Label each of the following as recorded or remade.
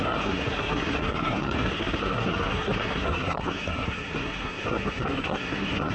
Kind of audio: remade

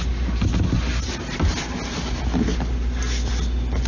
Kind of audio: recorded